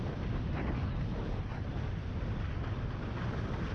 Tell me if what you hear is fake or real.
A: real